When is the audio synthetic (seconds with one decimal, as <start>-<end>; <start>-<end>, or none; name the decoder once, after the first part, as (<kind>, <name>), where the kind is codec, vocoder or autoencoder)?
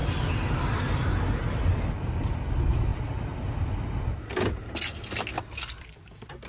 none